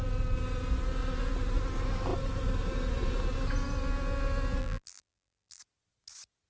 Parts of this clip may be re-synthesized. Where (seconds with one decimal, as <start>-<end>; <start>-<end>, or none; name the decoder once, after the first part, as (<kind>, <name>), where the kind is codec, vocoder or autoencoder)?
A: 4.6-5.6 (vocoder, BigVGAN v2)